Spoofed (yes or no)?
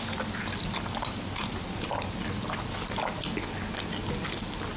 no